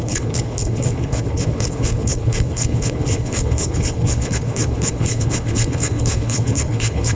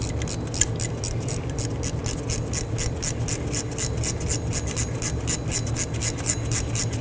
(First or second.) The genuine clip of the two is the second